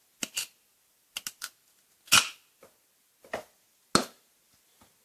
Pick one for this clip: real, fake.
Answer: real